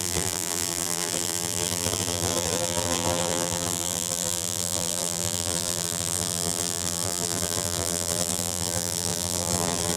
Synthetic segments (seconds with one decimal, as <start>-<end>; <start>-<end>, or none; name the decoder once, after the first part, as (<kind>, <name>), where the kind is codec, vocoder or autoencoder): 0.0-10.0 (vocoder, BigVGAN v2)